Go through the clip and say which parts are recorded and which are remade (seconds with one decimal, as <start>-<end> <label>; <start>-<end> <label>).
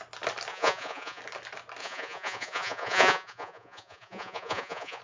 0.0-0.5 recorded; 0.5-1.2 remade; 1.2-1.8 recorded; 1.8-5.0 remade